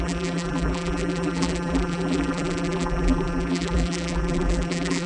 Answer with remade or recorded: remade